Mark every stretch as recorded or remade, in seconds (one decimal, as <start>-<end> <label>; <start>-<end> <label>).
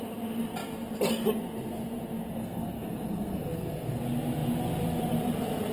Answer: 0.0-2.4 recorded; 2.4-4.0 remade; 4.0-5.7 recorded